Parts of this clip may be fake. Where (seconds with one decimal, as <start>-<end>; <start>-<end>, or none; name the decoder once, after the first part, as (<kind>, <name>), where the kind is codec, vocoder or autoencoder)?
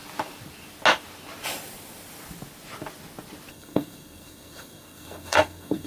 3.5-5.9 (codec, SNAC)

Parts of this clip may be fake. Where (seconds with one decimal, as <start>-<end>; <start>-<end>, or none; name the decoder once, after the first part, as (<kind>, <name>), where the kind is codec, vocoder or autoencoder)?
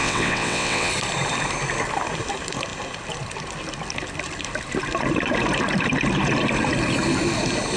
0.0-0.9 (vocoder, WaveNeXt)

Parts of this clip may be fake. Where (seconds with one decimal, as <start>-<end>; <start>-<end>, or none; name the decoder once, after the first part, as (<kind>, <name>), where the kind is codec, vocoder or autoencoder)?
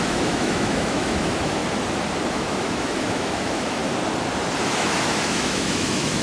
0.0-1.6 (autoencoder, DAC-VAE); 2.3-3.8; 4.6-6.2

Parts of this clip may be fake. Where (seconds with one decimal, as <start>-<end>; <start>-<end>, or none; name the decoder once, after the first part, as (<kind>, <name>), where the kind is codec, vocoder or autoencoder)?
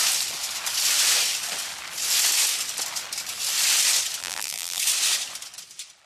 4.2-4.8 (vocoder, BigVGAN v2)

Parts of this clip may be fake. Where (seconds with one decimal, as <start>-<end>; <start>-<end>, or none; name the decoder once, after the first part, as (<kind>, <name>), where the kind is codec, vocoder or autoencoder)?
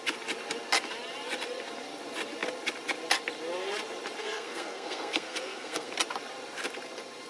4.2-5.9 (codec, SNAC)